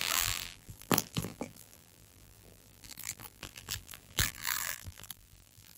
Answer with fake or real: fake